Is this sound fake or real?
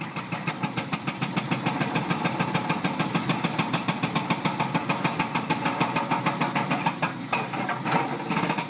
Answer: fake